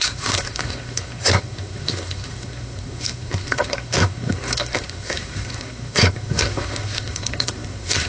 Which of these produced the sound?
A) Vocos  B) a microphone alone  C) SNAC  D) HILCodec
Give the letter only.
C